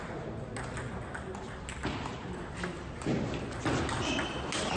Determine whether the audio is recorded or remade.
recorded